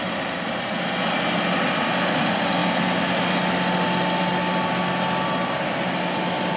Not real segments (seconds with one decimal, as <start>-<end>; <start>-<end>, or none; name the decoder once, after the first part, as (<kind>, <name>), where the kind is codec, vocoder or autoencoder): none